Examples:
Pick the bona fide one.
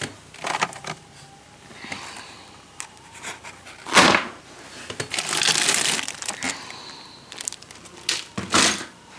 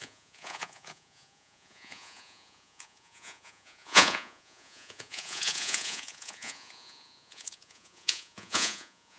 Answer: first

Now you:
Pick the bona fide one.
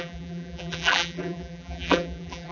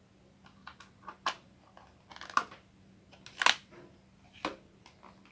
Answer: second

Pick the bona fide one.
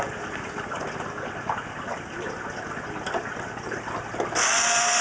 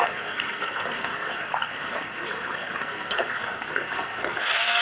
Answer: first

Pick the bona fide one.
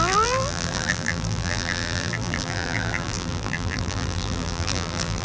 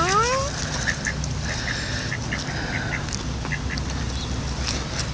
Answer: second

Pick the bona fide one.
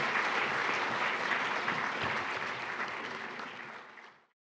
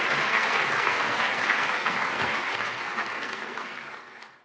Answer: first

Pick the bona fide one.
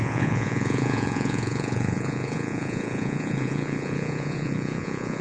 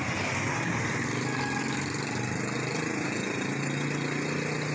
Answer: second